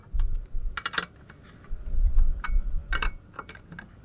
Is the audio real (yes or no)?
yes